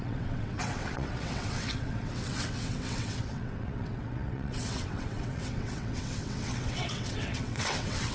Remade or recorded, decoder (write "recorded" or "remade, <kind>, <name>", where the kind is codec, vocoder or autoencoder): remade, vocoder, WaveNeXt